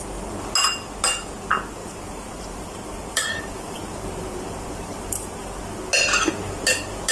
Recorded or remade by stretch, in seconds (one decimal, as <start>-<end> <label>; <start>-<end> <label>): 0.0-1.8 recorded; 1.8-5.5 remade; 5.5-7.1 recorded